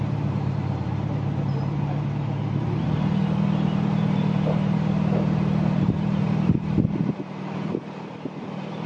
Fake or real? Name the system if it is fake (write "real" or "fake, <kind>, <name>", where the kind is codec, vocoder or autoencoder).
fake, vocoder, BigVGAN v2